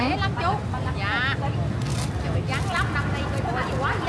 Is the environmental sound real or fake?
real